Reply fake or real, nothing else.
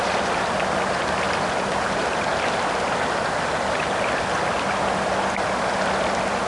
real